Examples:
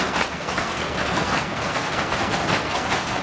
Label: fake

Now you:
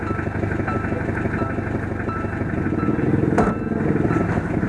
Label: real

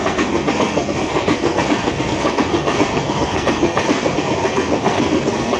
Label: fake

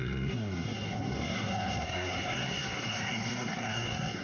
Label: fake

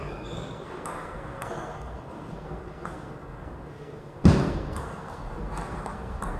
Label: fake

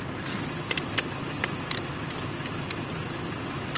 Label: real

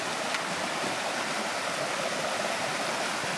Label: real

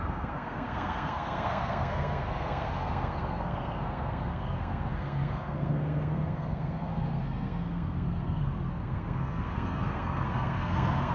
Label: fake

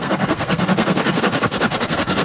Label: fake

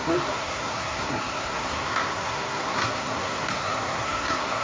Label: fake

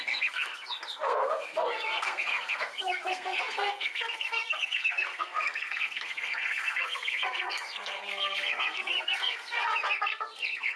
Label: fake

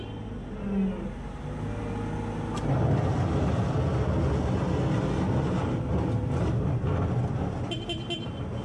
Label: real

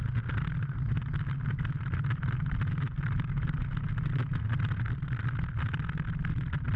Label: real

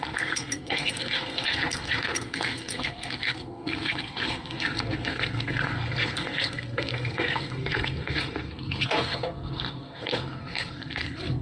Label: fake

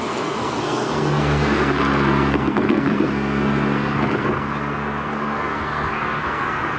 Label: fake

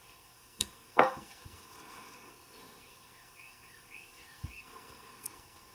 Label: fake